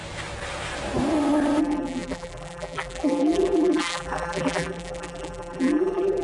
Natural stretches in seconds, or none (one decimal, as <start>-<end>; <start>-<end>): 0.0-1.6